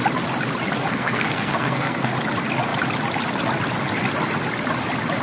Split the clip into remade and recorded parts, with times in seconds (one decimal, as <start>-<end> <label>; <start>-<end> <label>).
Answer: 0.0-0.9 recorded; 0.9-2.1 remade; 2.1-5.2 recorded